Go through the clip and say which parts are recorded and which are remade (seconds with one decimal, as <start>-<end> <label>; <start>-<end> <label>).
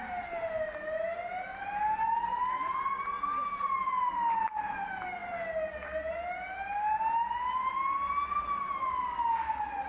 0.0-9.9 recorded